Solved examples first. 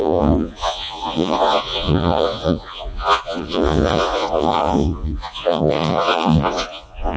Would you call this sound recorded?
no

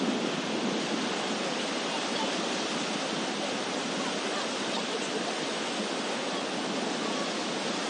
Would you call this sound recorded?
yes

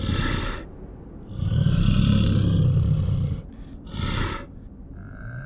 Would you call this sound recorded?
yes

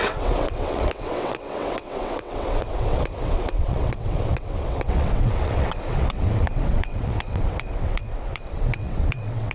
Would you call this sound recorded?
no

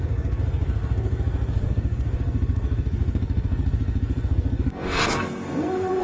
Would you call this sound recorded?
no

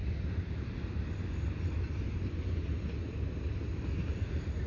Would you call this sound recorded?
yes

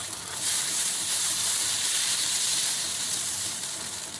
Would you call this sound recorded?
no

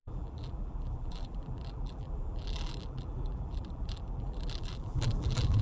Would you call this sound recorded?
no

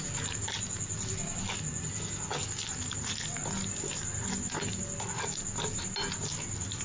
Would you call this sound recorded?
yes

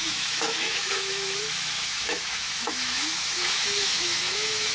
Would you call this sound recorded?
no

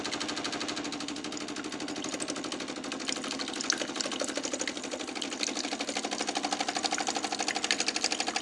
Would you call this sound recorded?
yes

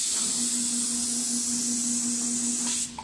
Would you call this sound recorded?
yes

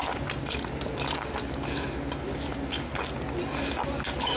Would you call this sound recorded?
yes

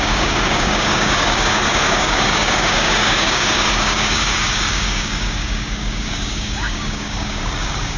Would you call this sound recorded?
no